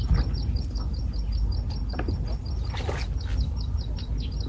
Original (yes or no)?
yes